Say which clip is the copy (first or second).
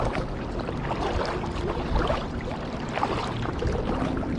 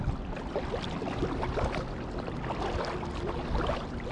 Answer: first